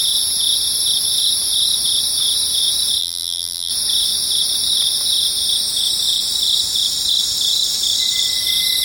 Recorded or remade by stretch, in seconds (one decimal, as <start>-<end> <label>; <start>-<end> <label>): 0.0-3.0 recorded; 3.0-3.7 remade; 3.7-8.8 recorded